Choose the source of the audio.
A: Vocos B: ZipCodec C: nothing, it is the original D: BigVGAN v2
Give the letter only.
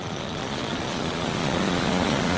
A